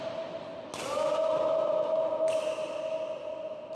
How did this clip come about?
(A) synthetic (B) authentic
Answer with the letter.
B